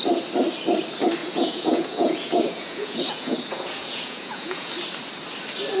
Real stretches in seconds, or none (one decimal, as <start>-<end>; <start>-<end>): 0.0-1.2; 4.7-5.8